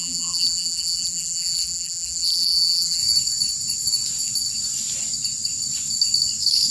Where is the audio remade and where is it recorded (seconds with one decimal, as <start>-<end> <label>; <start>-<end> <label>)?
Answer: 0.0-3.0 remade; 3.0-6.7 recorded